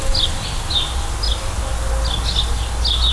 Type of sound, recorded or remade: recorded